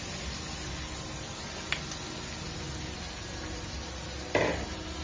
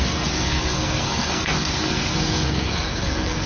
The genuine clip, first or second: first